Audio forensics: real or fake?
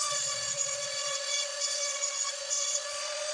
fake